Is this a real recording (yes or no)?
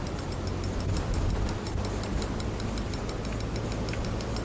yes